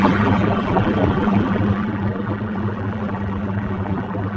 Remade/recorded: remade